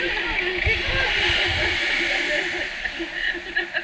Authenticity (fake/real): real